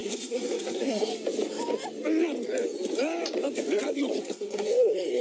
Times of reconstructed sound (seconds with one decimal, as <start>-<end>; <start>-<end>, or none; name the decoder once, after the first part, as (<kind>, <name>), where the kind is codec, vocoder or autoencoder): 0.0-1.1 (codec, SNAC); 4.2-5.2